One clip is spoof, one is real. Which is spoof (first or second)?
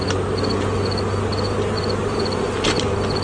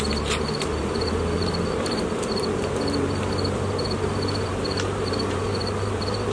second